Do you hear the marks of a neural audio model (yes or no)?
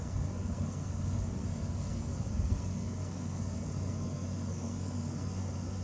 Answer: yes